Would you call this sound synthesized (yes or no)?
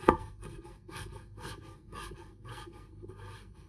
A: yes